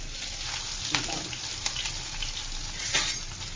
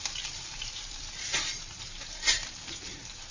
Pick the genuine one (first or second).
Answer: first